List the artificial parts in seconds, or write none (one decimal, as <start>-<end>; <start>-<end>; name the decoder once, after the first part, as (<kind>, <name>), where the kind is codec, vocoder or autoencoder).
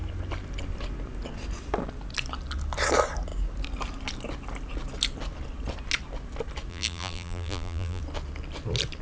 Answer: 6.7-8.0 (vocoder, BigVGAN v2)